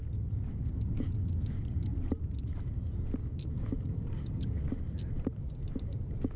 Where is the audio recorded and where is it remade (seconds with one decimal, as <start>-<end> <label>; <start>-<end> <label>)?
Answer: 0.0-6.4 recorded